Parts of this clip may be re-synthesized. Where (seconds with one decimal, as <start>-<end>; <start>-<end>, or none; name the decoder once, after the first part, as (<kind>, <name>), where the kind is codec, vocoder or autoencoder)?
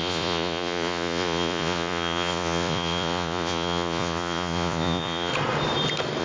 0.0-5.3 (vocoder, Vocos)